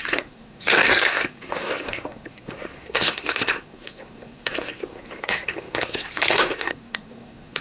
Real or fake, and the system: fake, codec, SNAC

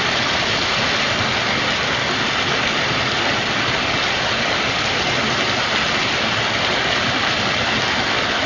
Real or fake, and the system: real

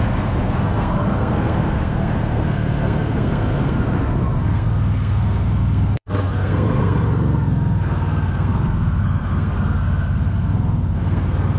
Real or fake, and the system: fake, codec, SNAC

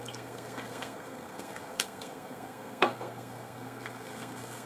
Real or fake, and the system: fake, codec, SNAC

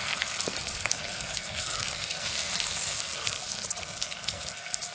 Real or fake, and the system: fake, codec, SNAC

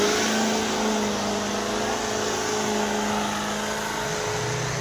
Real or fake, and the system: real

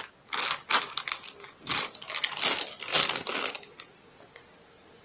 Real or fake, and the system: real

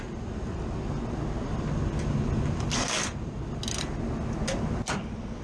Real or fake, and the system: real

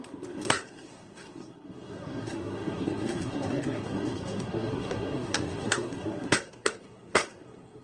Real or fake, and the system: fake, codec, SNAC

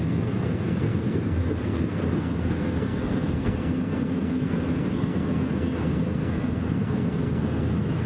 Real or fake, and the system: fake, codec, SNAC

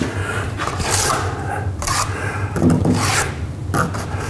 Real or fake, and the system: real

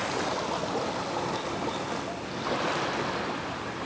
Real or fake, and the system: real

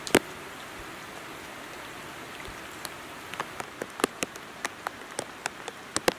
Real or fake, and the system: real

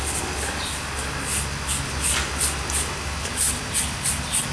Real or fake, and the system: real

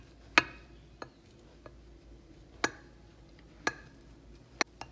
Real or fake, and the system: real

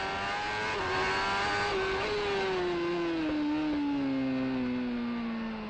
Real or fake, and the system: real